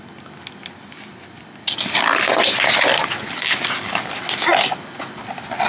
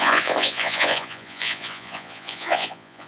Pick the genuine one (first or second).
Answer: first